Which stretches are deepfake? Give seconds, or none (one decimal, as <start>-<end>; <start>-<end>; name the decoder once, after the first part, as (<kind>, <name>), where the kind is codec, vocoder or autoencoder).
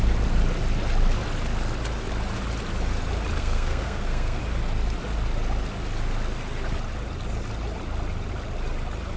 3.4-4.4 (codec, SNAC)